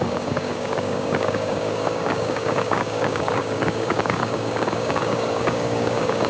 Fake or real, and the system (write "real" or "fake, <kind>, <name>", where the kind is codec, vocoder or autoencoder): fake, codec, DAC